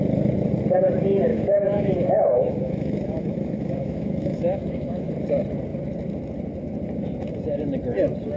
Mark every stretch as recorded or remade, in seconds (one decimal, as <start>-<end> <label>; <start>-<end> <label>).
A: 0.0-1.3 recorded; 1.3-5.1 remade; 5.1-8.4 recorded